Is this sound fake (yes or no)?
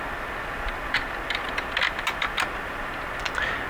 no